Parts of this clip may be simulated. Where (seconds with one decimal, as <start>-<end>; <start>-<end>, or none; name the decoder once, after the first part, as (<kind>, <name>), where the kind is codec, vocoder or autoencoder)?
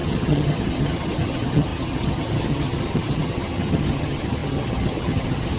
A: 0.0-5.6 (vocoder, HiFi-GAN)